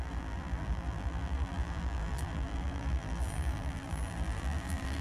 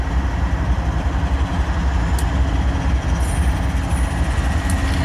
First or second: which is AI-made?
first